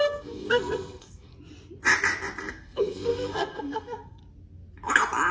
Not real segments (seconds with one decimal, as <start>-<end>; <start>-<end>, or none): 0.0-1.3; 2.5-4.2